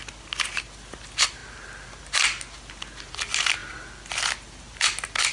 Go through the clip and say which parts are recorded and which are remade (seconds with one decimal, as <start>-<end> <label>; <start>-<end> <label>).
0.0-5.3 recorded